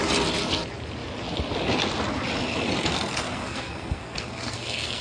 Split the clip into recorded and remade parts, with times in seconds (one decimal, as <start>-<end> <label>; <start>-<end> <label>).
0.0-2.9 recorded; 2.9-5.0 remade